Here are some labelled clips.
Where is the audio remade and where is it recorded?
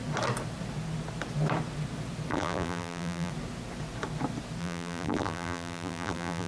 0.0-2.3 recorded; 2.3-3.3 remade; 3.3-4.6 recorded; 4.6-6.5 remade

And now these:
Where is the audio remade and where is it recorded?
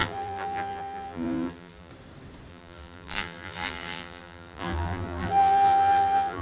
0.0-1.9 remade; 1.9-2.5 recorded; 2.5-6.4 remade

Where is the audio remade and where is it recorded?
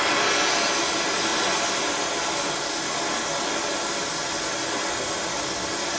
0.0-6.0 recorded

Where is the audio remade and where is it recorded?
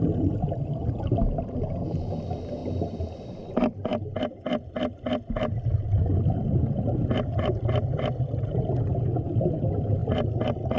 0.0-10.8 recorded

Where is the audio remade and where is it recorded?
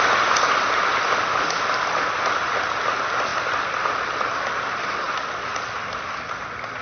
0.0-6.8 recorded